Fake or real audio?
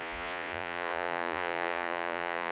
fake